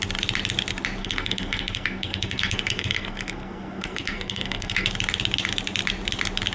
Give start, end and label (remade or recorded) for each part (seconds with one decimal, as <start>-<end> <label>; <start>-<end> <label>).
0.0-1.0 recorded; 1.0-4.9 remade; 4.9-6.5 recorded